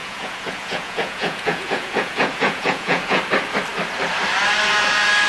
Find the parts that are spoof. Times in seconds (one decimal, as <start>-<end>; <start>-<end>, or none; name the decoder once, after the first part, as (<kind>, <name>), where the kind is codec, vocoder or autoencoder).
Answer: 0.0-3.2 (vocoder, Vocos)